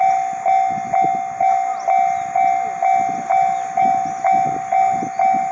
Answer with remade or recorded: recorded